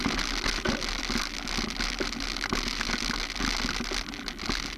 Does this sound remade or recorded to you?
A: recorded